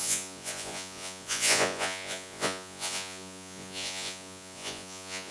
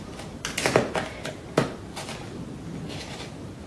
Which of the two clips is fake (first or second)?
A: first